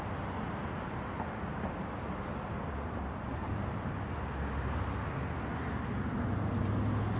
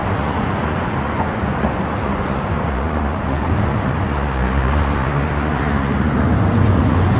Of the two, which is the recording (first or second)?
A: first